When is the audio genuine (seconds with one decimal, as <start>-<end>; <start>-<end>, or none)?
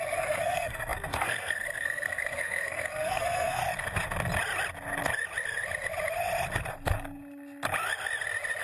3.6-8.6